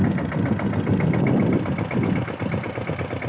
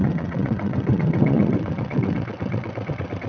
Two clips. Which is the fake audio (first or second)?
second